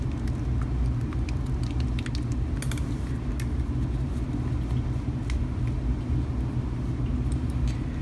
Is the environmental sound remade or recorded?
recorded